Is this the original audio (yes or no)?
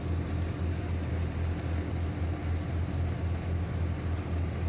yes